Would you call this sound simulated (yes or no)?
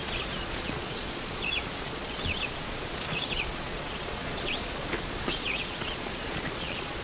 yes